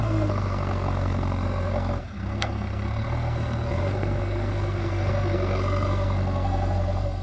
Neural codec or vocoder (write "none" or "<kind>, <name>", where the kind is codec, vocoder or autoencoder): codec, SNAC